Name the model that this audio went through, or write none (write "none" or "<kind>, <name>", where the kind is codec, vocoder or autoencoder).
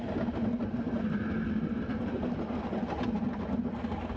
none